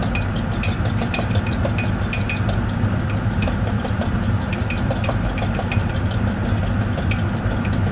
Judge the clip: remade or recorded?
recorded